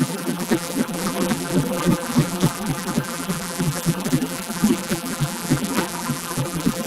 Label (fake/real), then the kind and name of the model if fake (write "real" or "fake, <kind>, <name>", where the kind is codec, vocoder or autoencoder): fake, vocoder, BigVGAN v2